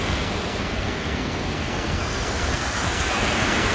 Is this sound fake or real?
fake